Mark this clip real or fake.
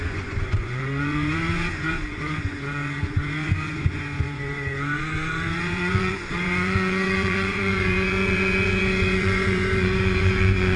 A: fake